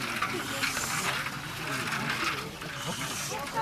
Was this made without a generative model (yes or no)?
yes